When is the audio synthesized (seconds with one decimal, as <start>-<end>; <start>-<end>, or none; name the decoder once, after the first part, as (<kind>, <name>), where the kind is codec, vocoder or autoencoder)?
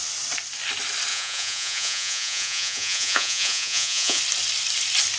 1.1-4.2 (vocoder, Vocos)